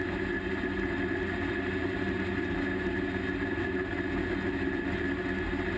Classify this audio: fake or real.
real